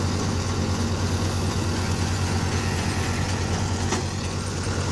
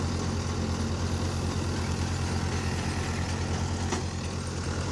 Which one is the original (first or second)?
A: second